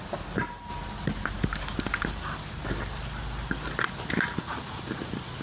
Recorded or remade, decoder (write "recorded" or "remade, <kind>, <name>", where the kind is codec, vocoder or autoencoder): recorded